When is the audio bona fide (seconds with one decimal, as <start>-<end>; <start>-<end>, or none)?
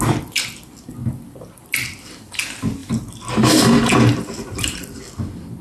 0.0-1.0; 2.4-2.8; 5.0-5.6